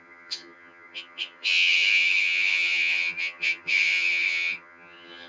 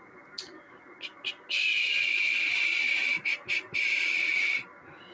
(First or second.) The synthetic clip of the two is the first